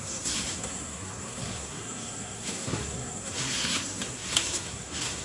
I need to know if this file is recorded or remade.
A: remade